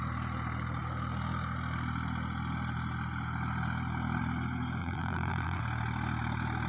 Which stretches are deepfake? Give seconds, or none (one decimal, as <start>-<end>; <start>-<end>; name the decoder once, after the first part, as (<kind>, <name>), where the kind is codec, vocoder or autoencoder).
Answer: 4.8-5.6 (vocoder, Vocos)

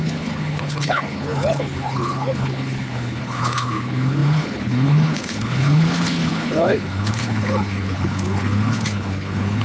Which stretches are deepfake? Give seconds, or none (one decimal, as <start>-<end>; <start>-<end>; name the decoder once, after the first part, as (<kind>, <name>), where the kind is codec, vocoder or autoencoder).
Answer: 0.0-9.6 (codec, HILCodec)

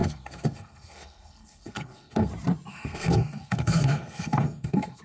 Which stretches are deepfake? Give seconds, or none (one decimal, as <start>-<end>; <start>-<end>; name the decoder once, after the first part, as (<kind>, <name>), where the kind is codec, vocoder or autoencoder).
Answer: 0.0-2.3 (codec, SNAC); 2.7-5.0